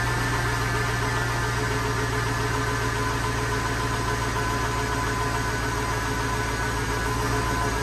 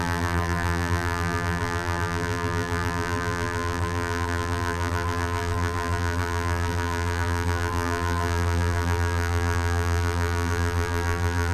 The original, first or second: first